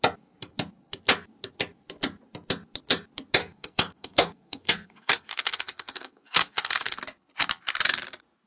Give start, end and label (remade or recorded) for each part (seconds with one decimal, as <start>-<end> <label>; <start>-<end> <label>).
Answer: 0.0-3.4 recorded; 3.4-7.0 remade; 7.0-8.5 recorded